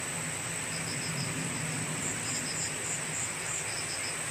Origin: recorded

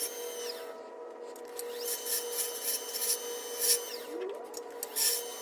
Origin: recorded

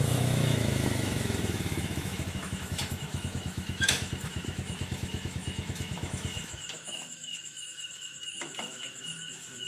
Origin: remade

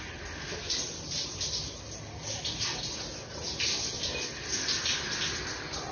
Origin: recorded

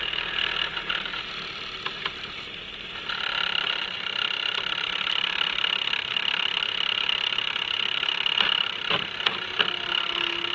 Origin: recorded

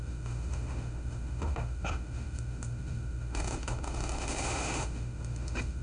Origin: remade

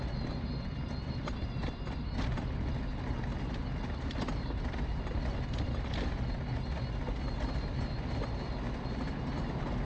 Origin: recorded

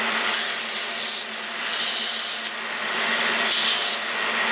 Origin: recorded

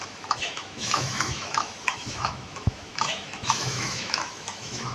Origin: remade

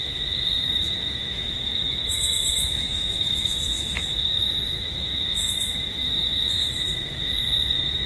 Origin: remade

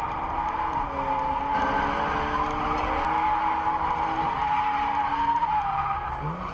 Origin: recorded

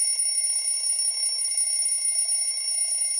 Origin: recorded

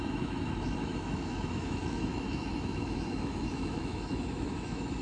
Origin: remade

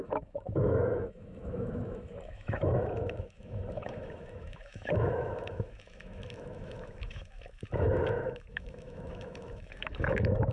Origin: remade